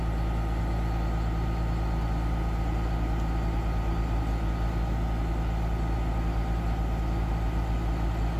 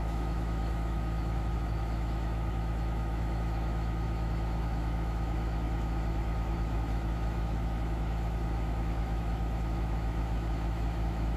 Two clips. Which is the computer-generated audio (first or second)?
second